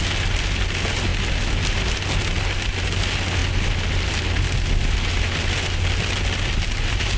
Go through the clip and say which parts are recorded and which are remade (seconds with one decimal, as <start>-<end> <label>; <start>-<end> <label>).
0.0-7.2 recorded